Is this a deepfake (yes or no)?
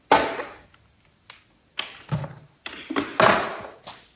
no